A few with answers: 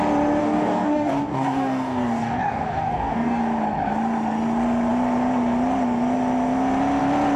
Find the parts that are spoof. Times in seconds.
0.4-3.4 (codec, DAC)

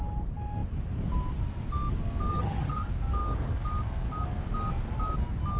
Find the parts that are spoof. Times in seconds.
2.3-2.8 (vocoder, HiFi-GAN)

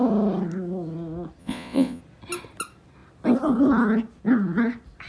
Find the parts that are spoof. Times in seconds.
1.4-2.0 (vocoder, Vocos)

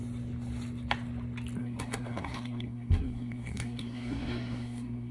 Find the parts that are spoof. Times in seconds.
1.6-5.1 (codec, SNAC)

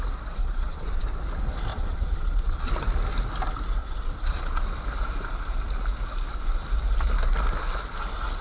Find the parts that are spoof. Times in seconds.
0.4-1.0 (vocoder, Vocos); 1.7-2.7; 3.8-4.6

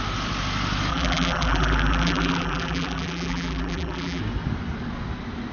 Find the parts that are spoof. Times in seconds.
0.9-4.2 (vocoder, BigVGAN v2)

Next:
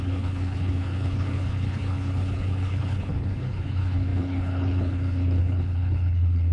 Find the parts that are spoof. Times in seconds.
0.0-6.5 (codec, HILCodec)